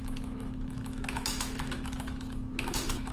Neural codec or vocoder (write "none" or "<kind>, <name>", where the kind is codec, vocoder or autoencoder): autoencoder, DAC-VAE